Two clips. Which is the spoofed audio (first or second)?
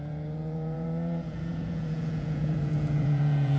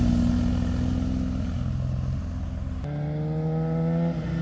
first